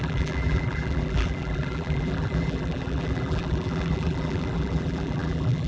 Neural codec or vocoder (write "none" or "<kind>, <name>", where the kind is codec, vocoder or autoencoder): vocoder, BigVGAN v2